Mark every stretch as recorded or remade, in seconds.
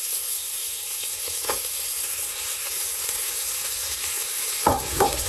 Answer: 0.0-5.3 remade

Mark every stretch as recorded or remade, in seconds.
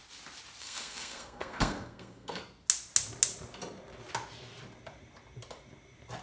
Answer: 0.0-0.6 recorded; 0.6-2.4 remade; 2.4-6.2 recorded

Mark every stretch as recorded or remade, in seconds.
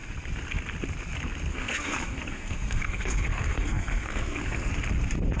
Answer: 0.0-1.5 recorded; 1.5-4.7 remade; 4.7-5.4 recorded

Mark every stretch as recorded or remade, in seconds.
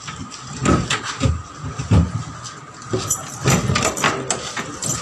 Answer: 0.0-5.0 recorded